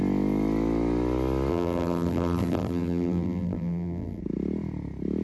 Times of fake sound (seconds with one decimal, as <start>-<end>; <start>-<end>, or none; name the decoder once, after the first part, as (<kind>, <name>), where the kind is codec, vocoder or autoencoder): 1.5-4.2 (vocoder, BigVGAN v2)